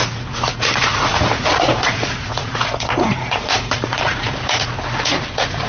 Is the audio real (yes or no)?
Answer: no